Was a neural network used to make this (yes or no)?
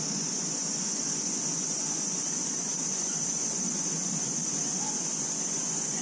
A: yes